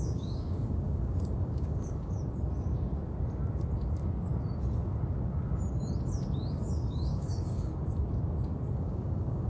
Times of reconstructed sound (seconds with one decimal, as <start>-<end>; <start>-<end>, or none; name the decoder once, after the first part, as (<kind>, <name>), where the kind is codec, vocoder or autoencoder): 0.0-2.2 (codec, DAC); 6.5-7.7; 8.7-9.5